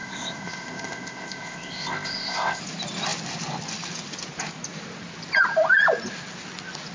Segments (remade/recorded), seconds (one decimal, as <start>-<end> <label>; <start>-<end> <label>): 0.0-2.6 remade; 2.6-6.9 recorded